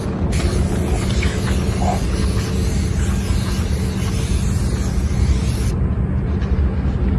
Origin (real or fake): real